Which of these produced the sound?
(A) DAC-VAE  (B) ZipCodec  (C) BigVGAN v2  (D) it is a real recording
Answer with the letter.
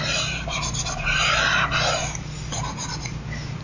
D